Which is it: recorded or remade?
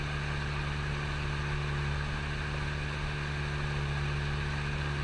recorded